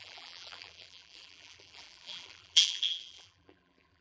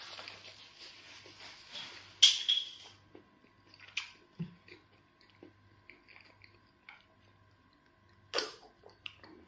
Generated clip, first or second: first